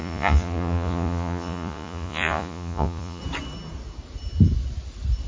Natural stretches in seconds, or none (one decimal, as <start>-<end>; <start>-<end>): 3.2-5.3